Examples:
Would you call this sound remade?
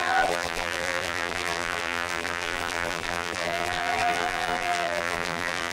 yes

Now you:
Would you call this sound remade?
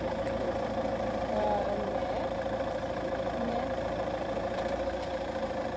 yes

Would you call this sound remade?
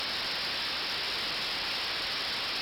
no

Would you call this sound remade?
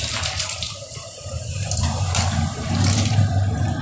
yes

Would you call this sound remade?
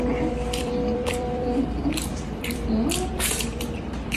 yes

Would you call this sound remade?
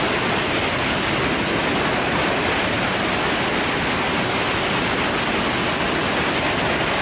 no